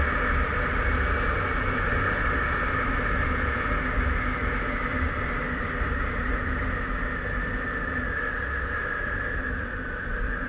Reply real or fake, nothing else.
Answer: real